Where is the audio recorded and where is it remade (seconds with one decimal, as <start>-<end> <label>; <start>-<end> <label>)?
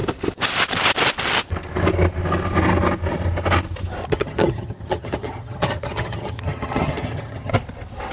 0.0-4.0 recorded; 4.0-7.5 remade; 7.5-8.1 recorded